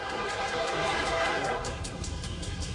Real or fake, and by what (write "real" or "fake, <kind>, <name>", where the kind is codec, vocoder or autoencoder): fake, codec, SNAC